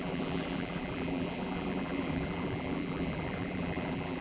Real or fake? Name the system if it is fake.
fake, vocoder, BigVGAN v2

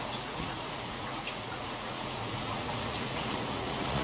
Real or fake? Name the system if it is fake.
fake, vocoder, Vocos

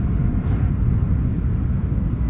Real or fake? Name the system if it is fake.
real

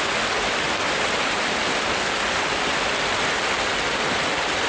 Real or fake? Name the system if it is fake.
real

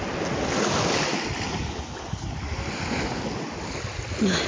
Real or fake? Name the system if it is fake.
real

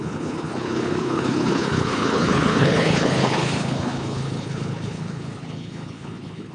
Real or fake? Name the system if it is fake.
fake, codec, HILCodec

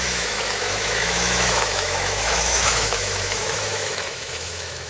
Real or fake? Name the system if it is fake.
fake, autoencoder, DAC-VAE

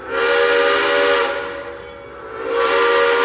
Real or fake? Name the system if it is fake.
real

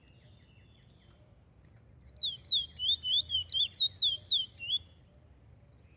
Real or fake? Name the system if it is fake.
real